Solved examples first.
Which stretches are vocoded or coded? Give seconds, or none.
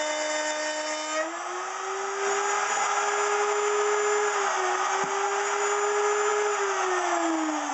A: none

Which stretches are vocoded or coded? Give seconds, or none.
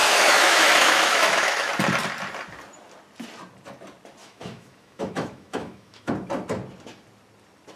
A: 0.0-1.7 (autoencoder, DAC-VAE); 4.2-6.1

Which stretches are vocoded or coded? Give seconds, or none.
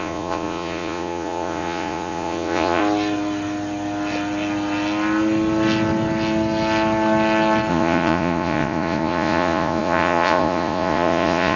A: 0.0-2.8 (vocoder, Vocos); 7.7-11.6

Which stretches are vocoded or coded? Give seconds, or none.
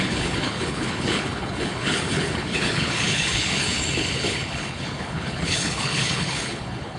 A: 0.0-7.0 (codec, HILCodec)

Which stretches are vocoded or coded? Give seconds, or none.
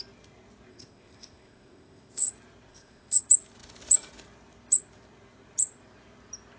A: 0.7-2.3 (codec, ZipCodec); 2.7-3.2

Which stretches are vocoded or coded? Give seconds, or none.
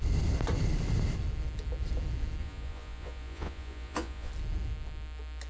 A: 2.4-4.3 (vocoder, Vocos)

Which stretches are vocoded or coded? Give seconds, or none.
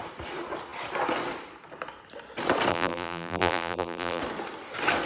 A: 2.7-4.2 (vocoder, BigVGAN v2)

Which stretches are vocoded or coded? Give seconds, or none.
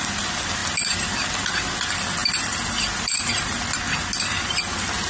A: 2.2-3.5 (vocoder, BigVGAN v2)